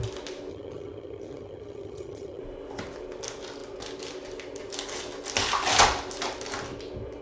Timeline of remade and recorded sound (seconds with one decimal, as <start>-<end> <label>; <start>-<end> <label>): 0.0-0.5 recorded; 0.5-2.4 remade; 2.4-7.2 recorded